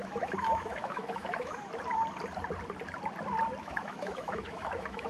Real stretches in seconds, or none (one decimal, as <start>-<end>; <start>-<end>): 1.6-3.6